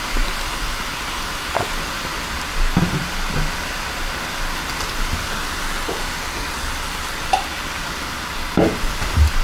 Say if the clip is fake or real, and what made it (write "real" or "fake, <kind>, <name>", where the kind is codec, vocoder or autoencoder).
real